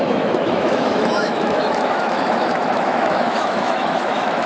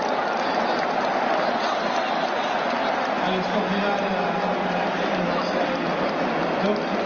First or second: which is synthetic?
first